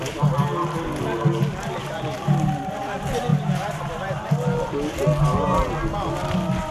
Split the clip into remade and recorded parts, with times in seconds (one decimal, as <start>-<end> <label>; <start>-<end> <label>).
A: 0.0-3.3 recorded; 3.3-4.3 remade; 4.3-6.7 recorded